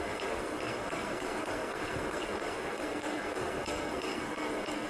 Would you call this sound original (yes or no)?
no